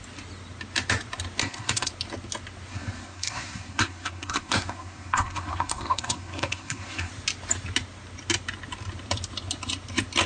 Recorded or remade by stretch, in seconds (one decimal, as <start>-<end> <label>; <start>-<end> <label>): 0.0-1.4 recorded; 1.4-1.9 remade; 1.9-2.7 recorded; 2.7-7.1 remade; 7.1-10.3 recorded